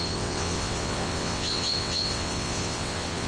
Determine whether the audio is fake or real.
fake